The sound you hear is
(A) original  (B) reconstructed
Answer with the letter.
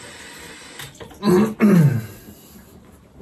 A